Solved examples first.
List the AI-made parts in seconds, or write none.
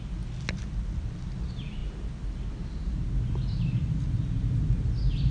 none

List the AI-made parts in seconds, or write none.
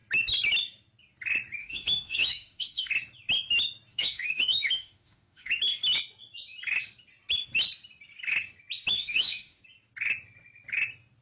1.6-2.9 (autoencoder, DAC-VAE); 3.9-5.6; 8.9-9.6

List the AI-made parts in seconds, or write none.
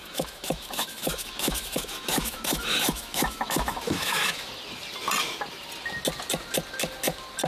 0.0-4.5 (autoencoder, DAC-VAE)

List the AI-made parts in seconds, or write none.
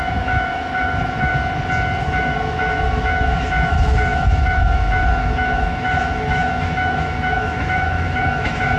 0.0-1.3 (autoencoder, DAC-VAE); 2.0-8.8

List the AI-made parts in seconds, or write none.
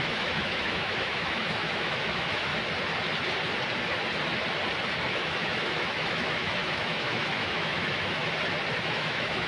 0.0-2.5 (autoencoder, DAC-VAE); 5.1-8.2; 8.7-9.5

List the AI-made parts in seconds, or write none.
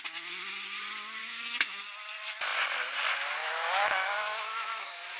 1.2-1.8 (autoencoder, DAC-VAE); 3.4-5.2